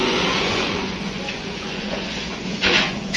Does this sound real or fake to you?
fake